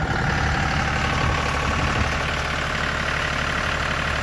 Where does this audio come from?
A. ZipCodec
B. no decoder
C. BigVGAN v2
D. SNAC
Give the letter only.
B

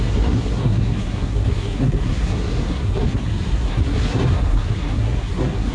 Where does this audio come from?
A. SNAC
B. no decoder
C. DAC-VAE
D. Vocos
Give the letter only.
A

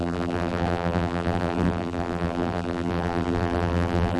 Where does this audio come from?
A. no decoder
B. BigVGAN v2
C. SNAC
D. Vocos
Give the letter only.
B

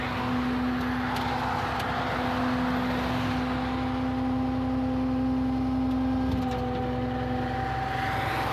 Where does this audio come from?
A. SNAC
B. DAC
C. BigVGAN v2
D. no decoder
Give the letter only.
D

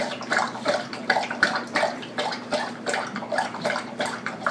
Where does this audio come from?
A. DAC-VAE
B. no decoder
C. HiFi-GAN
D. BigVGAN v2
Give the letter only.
D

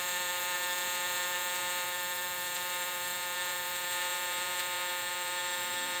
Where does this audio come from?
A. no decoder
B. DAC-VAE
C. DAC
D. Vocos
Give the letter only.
D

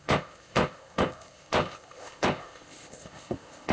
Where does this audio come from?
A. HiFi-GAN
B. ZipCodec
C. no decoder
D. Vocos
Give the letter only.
B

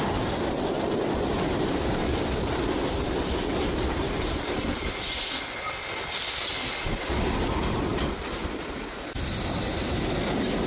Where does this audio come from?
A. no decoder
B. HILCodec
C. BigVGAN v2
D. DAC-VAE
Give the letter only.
A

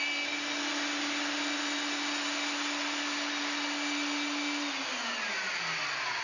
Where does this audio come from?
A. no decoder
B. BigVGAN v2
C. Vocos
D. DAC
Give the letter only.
A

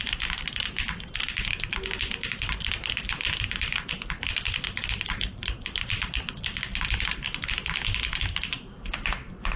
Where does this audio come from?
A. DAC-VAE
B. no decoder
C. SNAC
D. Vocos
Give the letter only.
B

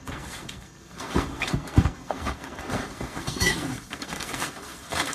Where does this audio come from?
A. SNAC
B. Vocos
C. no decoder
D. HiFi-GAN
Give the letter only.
A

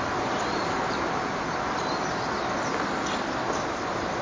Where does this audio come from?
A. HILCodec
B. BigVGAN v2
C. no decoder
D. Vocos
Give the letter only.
C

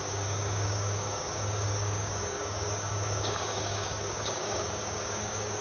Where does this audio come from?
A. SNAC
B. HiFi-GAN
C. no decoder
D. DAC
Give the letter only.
D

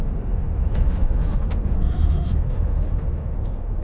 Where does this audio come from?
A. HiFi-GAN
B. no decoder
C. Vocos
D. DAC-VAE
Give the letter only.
D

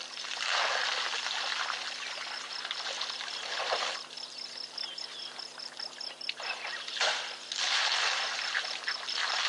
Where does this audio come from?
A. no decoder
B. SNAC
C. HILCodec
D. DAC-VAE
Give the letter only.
A